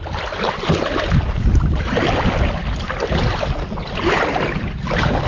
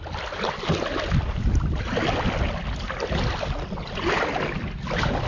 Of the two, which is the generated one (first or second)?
first